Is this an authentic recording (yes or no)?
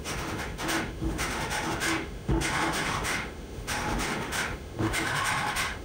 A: no